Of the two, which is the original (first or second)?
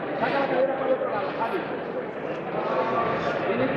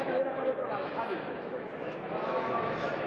first